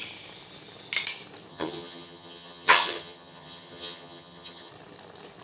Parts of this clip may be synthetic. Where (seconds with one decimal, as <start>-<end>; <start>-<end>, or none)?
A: 1.5-4.7